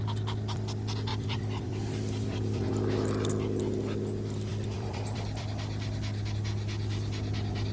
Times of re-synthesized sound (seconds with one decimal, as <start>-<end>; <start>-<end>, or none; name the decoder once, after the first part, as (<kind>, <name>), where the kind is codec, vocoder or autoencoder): 1.1-2.7 (vocoder, BigVGAN v2); 4.5-5.5